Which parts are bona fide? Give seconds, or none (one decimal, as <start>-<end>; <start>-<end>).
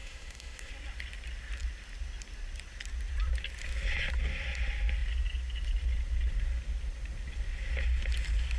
0.7-8.6